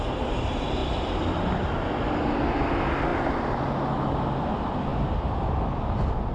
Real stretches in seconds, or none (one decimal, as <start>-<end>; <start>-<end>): 0.0-0.8; 1.7-6.3